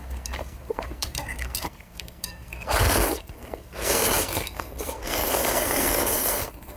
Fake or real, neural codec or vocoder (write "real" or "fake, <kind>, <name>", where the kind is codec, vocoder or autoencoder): fake, codec, SNAC